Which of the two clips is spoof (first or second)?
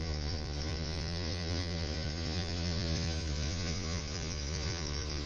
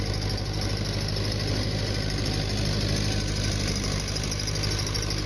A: first